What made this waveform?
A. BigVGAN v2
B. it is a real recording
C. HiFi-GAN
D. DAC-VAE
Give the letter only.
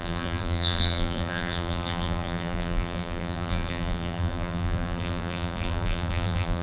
A